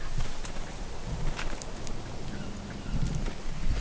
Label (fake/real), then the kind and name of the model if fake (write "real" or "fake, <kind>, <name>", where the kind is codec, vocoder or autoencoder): real